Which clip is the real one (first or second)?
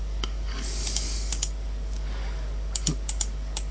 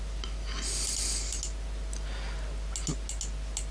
second